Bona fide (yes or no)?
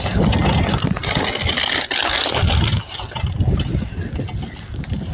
yes